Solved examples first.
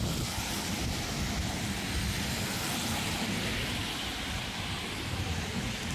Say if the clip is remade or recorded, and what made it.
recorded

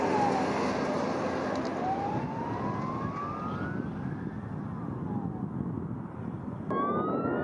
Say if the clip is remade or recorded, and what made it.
recorded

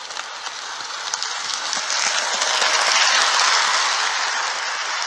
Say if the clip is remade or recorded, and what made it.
recorded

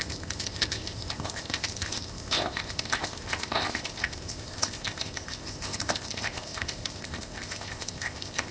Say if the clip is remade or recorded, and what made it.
remade, codec, ZipCodec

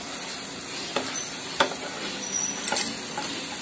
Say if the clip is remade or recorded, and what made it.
recorded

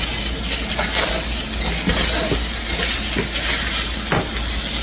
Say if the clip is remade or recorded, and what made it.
recorded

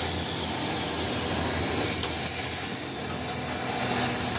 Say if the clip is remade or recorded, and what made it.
recorded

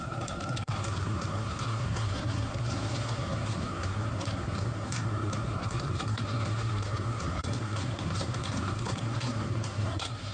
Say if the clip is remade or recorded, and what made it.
remade, codec, SNAC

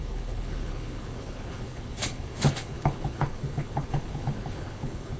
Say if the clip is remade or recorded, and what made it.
remade, codec, HILCodec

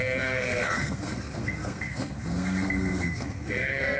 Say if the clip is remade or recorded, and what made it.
remade, codec, SNAC